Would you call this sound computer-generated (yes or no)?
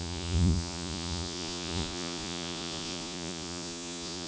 yes